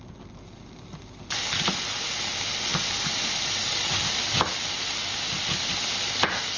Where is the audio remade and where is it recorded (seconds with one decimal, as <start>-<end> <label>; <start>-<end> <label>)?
0.0-6.6 recorded